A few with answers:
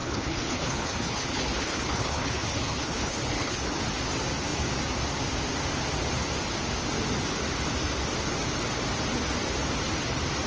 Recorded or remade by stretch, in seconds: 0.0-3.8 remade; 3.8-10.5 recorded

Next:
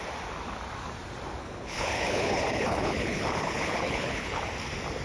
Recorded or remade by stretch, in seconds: 0.0-1.4 recorded; 1.4-4.4 remade; 4.4-5.0 recorded

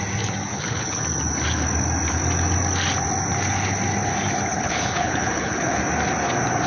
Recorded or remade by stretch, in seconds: 0.0-0.5 recorded; 0.5-1.0 remade; 1.0-4.5 recorded; 4.5-5.8 remade; 5.8-6.7 recorded